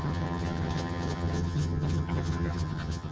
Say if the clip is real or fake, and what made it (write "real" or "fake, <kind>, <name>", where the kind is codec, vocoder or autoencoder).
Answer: fake, vocoder, HiFi-GAN